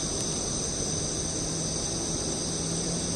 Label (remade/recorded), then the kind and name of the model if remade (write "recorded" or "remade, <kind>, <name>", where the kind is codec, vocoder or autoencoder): recorded